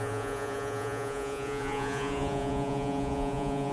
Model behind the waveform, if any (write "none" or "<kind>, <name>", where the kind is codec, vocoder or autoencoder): vocoder, Vocos